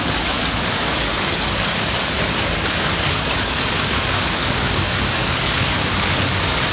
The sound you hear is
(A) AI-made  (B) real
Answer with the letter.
A